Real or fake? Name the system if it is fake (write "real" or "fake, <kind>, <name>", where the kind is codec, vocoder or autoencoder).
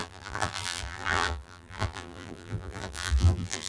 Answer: fake, vocoder, BigVGAN v2